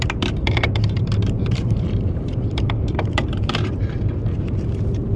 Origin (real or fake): fake